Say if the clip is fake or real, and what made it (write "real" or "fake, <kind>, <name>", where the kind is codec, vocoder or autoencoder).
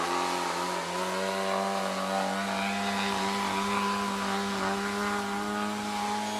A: real